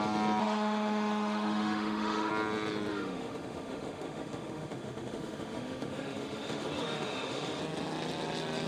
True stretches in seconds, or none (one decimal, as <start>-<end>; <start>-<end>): 0.0-0.4; 2.3-2.9; 7.6-8.7